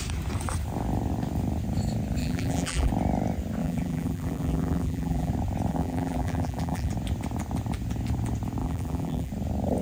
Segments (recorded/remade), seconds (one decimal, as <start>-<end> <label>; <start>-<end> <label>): 0.0-2.2 recorded; 2.2-2.9 remade; 2.9-3.6 recorded; 3.6-5.3 remade; 5.3-5.7 recorded; 5.7-6.9 remade; 6.9-8.6 recorded; 8.6-9.3 remade; 9.3-9.8 recorded